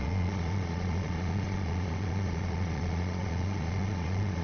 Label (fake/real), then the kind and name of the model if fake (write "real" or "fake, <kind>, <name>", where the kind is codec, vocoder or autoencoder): fake, vocoder, Vocos